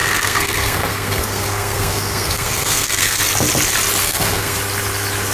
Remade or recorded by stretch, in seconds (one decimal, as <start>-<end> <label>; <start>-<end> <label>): 0.0-3.2 remade; 3.2-4.0 recorded; 4.0-4.6 remade; 4.6-5.3 recorded